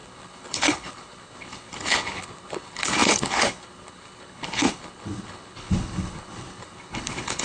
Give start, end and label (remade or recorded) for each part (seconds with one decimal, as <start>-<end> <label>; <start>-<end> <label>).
0.0-7.4 remade